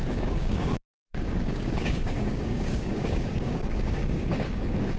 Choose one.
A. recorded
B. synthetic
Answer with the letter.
B